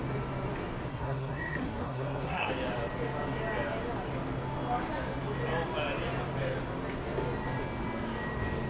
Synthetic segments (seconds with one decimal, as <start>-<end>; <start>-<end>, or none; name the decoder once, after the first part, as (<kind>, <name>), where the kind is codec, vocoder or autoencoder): 0.9-2.5 (codec, SNAC)